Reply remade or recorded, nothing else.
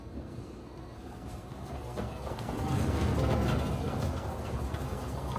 remade